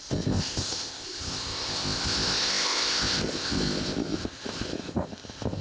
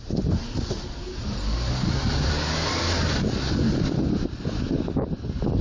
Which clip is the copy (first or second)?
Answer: first